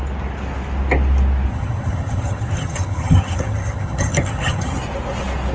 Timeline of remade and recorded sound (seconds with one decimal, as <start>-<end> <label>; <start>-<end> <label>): 0.0-1.5 recorded; 1.5-4.8 remade; 4.8-5.5 recorded

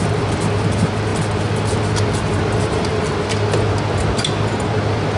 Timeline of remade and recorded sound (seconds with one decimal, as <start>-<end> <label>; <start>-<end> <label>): 0.0-5.2 recorded

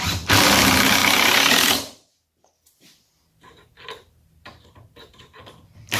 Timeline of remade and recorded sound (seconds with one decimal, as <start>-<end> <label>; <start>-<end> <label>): 0.0-6.0 recorded

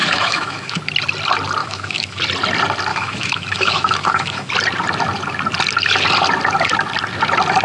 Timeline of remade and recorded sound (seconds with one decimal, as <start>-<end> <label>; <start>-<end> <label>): 0.0-0.8 remade; 0.8-1.6 recorded; 1.6-2.2 remade; 2.2-2.9 recorded; 2.9-4.5 remade; 4.5-7.6 recorded